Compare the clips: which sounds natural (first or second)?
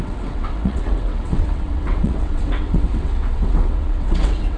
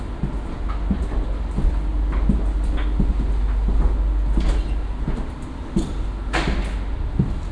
second